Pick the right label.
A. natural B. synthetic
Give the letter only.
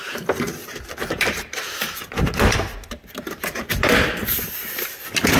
A